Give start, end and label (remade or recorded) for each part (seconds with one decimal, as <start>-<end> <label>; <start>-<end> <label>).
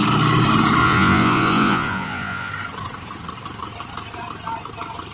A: 0.0-0.8 recorded; 0.8-2.5 remade; 2.5-5.1 recorded